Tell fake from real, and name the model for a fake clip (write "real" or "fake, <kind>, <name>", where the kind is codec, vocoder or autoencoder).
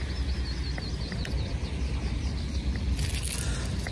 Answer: real